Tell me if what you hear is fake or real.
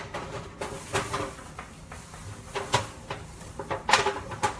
real